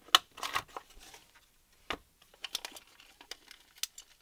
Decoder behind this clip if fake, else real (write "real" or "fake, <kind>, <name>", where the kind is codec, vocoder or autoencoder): real